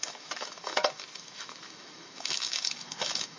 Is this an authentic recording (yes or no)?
no